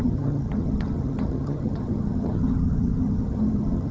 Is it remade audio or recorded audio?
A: remade